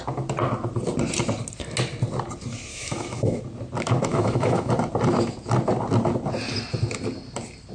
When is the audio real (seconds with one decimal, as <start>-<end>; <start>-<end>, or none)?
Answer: 0.0-2.7; 3.4-4.1; 4.7-7.7